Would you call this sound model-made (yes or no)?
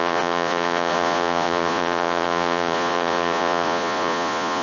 yes